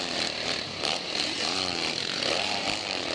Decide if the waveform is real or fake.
fake